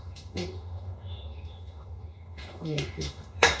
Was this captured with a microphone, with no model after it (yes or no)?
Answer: no